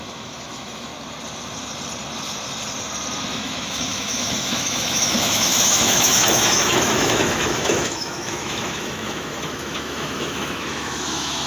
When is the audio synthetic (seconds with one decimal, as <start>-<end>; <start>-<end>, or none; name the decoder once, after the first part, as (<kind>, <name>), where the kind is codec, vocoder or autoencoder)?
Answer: 0.0-0.9 (autoencoder, DAC-VAE); 3.2-11.5